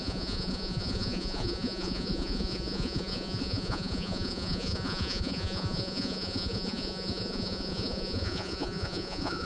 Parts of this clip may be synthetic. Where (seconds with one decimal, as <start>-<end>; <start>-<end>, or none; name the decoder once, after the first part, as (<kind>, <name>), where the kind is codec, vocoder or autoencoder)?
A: 0.0-9.5 (vocoder, Vocos)